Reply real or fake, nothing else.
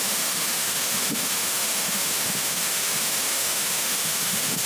fake